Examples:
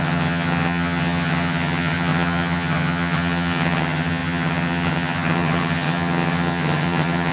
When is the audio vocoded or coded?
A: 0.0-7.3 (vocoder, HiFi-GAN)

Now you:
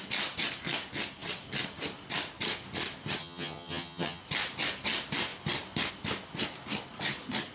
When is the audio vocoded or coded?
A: 3.2-4.2 (vocoder, HiFi-GAN)

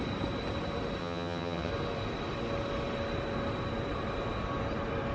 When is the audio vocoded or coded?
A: 1.0-1.7 (vocoder, HiFi-GAN)

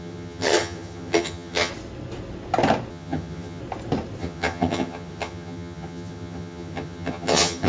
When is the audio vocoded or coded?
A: 0.0-1.7 (vocoder, HiFi-GAN); 2.9-3.6; 4.2-7.7

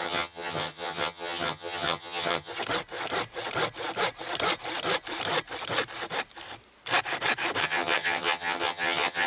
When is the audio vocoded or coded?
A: 0.0-2.5 (vocoder, HiFi-GAN); 7.6-9.3